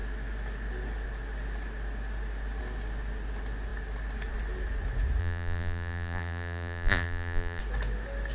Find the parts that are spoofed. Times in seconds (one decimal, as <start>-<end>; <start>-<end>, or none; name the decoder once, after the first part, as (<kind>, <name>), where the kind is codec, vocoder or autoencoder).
5.2-7.6 (vocoder, BigVGAN v2)